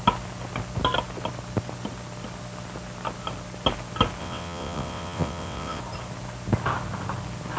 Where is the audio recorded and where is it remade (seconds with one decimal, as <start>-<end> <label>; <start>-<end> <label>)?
0.0-4.2 recorded; 4.2-5.8 remade; 5.8-7.6 recorded